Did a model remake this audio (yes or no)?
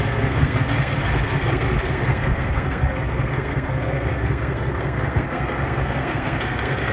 yes